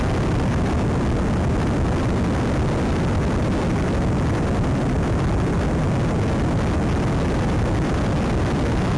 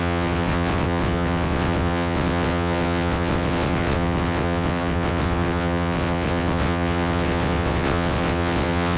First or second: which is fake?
second